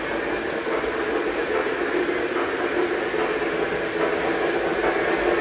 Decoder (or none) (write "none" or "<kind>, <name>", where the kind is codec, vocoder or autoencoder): none